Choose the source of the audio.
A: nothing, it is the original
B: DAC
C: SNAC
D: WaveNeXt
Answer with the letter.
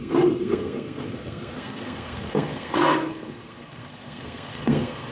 C